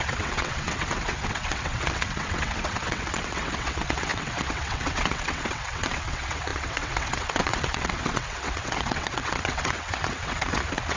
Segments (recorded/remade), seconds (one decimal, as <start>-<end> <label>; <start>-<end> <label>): 0.0-11.0 remade